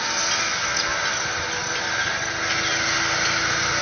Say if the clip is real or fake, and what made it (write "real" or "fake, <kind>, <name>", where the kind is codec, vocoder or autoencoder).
real